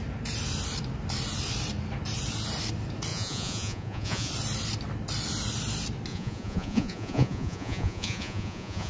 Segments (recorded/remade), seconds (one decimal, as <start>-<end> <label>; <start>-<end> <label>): 0.0-3.1 recorded; 3.1-4.3 remade; 4.3-6.1 recorded; 6.1-8.9 remade